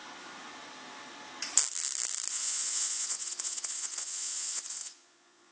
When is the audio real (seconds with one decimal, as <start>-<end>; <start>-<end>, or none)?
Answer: 0.0-2.3